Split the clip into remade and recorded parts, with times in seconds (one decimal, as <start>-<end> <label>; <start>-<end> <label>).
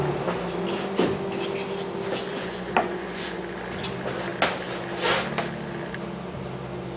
0.0-2.3 recorded; 2.3-3.4 remade; 3.4-7.0 recorded